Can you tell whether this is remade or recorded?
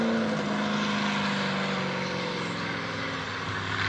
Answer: recorded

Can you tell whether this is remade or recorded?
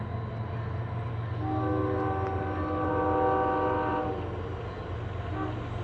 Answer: recorded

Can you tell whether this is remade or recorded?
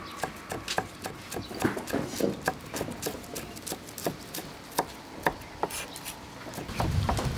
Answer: recorded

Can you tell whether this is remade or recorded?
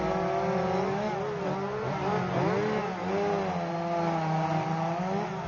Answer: recorded